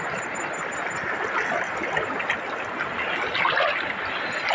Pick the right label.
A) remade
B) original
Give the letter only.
B